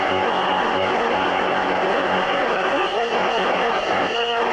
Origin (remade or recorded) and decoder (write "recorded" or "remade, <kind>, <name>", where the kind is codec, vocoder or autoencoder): remade, codec, SNAC